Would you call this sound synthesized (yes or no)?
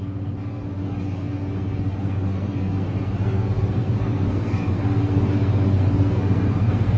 yes